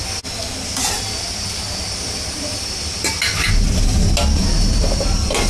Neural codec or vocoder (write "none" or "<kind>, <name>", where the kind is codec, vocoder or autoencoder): none